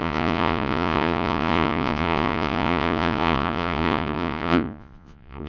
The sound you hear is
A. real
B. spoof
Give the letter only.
B